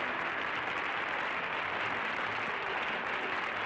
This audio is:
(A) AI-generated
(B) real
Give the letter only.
B